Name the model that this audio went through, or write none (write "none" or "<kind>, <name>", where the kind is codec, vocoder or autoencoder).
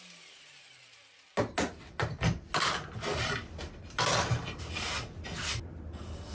none